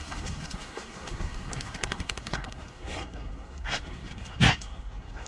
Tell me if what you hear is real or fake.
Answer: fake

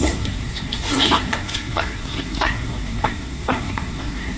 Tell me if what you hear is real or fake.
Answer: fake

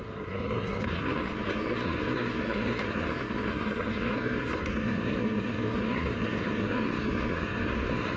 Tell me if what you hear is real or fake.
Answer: fake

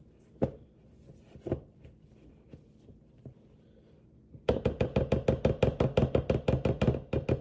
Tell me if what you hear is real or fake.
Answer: real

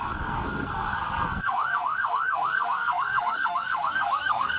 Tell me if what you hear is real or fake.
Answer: fake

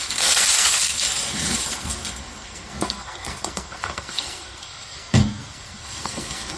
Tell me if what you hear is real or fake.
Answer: fake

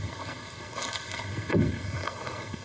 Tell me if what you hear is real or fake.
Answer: fake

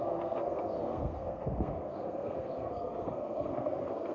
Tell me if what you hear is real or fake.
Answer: fake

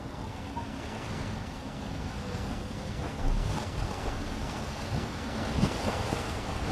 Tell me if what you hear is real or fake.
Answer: fake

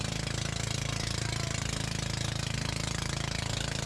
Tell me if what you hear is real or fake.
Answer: real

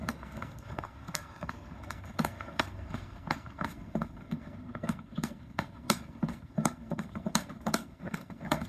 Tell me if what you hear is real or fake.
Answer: fake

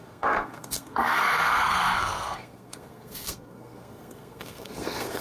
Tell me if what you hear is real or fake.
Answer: fake